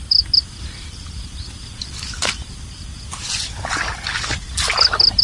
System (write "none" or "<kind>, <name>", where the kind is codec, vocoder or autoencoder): none